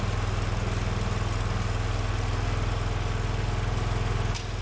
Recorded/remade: recorded